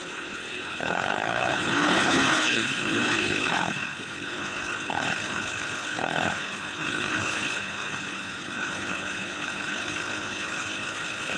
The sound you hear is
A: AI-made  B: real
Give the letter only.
A